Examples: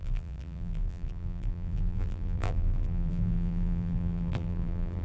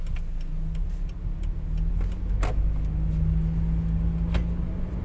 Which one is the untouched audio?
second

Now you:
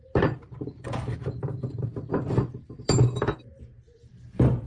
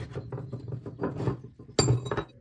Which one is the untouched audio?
second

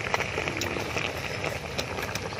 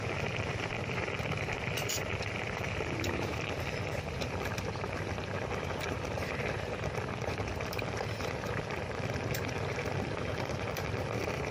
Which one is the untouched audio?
first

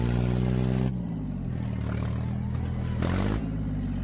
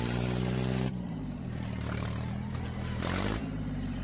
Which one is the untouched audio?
first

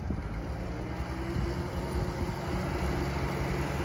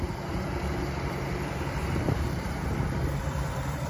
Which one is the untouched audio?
first